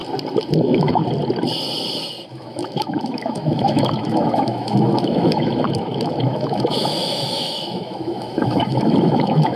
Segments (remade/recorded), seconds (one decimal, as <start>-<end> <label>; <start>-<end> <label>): 0.0-0.6 recorded; 0.6-1.0 remade; 1.0-2.3 recorded; 2.3-9.6 remade